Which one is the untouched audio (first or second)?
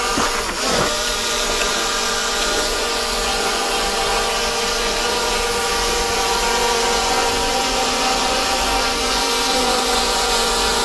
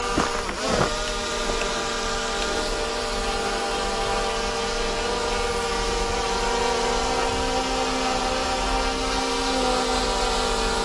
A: second